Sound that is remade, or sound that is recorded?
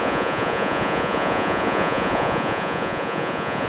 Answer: remade